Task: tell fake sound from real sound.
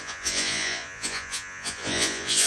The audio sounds fake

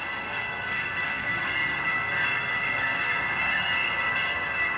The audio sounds fake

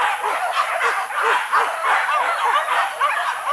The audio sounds real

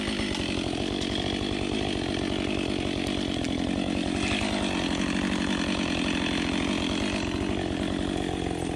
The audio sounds real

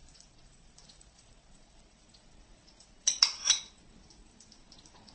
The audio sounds fake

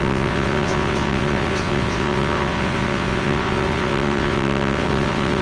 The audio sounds fake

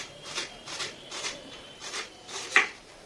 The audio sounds fake